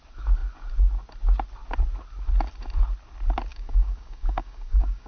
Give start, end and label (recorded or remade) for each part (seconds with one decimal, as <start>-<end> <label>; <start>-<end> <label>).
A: 0.0-3.5 recorded; 3.5-5.1 remade